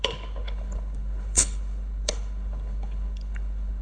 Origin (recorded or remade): remade